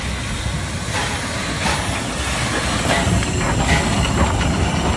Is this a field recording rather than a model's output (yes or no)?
yes